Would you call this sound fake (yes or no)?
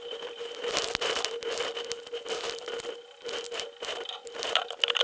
no